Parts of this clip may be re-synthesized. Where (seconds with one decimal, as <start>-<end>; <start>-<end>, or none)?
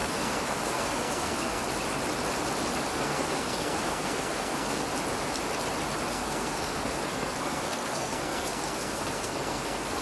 0.0-1.6; 2.9-4.9; 6.1-10.0